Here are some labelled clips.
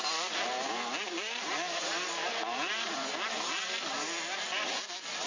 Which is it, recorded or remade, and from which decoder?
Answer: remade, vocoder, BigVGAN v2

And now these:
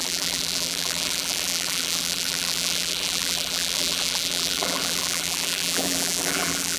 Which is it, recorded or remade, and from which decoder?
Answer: remade, vocoder, BigVGAN v2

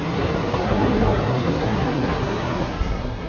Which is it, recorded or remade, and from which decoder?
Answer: remade, codec, SNAC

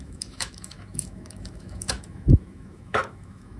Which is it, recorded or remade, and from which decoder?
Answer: remade, autoencoder, DAC-VAE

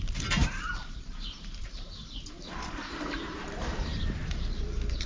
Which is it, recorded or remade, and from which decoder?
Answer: remade, vocoder, BigVGAN v2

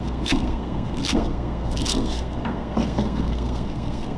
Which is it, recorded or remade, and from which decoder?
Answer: remade, codec, SNAC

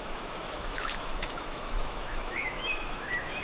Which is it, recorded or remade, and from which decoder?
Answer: remade, autoencoder, DAC-VAE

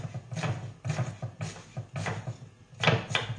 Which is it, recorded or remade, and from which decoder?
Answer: recorded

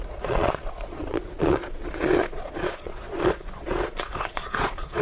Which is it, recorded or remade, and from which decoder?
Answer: remade, vocoder, Vocos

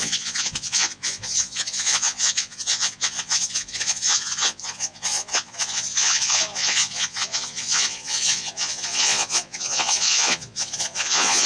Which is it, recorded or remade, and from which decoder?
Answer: remade, vocoder, Vocos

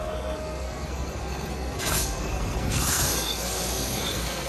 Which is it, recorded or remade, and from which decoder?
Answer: remade, codec, SNAC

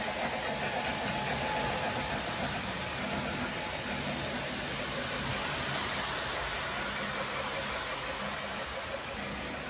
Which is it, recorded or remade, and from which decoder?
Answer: recorded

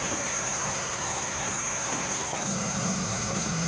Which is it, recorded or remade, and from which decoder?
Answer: remade, codec, SNAC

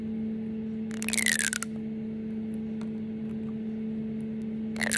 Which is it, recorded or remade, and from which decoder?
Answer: recorded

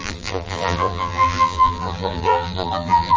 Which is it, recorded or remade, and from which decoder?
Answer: remade, vocoder, BigVGAN v2